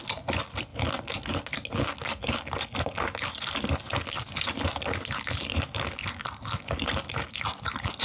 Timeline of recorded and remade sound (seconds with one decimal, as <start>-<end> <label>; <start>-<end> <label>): 0.0-8.0 recorded